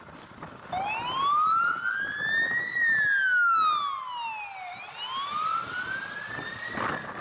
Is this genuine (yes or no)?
yes